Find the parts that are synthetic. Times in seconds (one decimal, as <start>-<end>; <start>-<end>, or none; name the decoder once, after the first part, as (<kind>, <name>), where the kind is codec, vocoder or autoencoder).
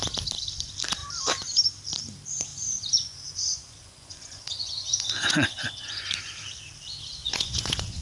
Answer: 2.5-6.2 (vocoder, Vocos); 7.2-8.0